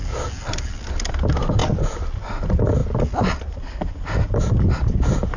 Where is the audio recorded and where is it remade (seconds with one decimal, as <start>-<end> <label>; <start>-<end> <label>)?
0.0-1.6 recorded; 1.6-2.3 remade; 2.3-2.8 recorded; 2.8-3.9 remade; 3.9-5.4 recorded